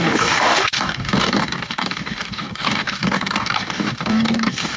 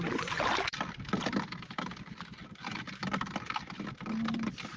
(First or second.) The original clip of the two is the second